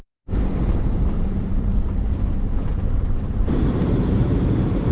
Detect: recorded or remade remade